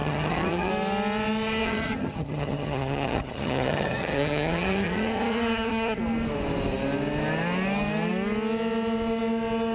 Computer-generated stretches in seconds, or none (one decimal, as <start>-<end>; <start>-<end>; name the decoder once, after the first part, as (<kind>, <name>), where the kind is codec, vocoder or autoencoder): 0.0-0.7 (vocoder, HiFi-GAN); 1.6-6.0